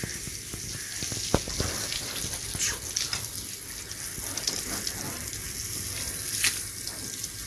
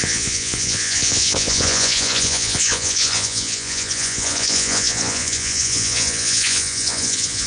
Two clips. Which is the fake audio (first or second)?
second